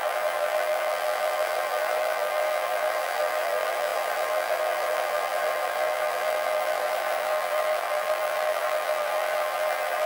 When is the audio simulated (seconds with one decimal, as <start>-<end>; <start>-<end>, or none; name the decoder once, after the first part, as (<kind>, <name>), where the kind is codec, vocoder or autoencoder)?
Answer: 0.0-10.1 (vocoder, BigVGAN v2)